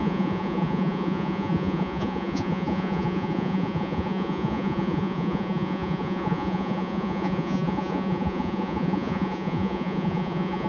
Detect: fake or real fake